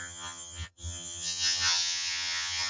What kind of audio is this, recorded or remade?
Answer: remade